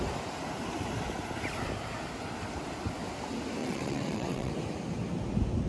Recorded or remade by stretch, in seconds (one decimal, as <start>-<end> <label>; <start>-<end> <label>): 0.0-3.6 recorded; 3.6-4.5 remade; 4.5-5.7 recorded